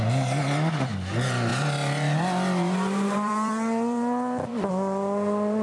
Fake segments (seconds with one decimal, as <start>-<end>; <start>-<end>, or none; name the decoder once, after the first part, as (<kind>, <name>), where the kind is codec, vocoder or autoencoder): 1.5-4.7 (vocoder, BigVGAN v2)